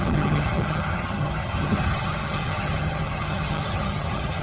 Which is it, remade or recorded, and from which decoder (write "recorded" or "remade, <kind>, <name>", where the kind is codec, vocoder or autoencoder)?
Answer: remade, vocoder, HiFi-GAN